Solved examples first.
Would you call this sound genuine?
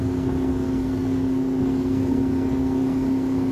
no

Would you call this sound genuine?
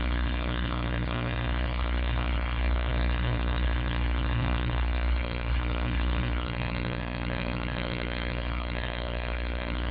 no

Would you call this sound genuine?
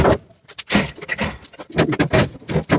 yes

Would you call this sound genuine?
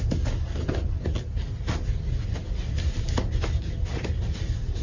yes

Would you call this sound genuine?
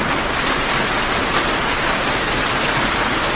yes